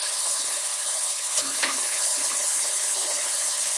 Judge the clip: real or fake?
fake